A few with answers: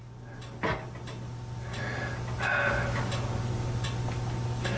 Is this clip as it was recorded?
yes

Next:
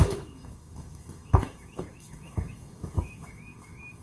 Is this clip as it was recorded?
no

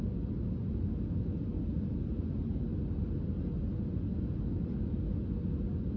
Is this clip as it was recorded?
yes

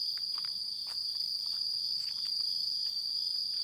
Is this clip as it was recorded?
no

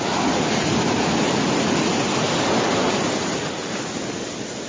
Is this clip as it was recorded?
yes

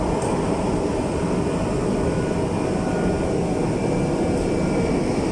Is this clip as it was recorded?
yes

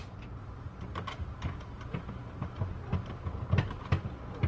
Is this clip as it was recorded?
yes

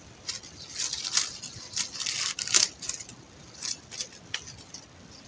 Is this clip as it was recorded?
yes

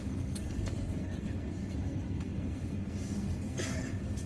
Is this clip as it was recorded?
no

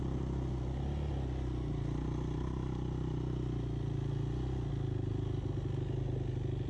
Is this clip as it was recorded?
yes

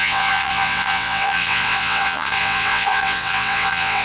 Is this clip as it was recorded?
no